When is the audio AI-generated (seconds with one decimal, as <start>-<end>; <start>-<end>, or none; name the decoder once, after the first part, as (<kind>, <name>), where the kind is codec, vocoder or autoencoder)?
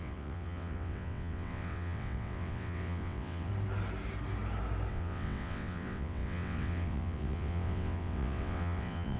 0.0-3.5 (vocoder, WaveNeXt); 4.9-9.2